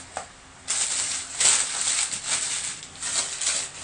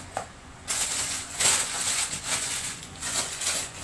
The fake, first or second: second